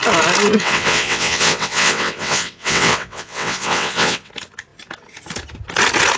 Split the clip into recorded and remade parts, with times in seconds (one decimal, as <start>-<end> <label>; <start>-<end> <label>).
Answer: 0.0-0.6 recorded; 0.6-4.3 remade; 4.3-6.2 recorded